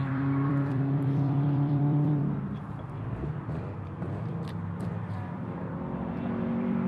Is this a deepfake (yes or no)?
yes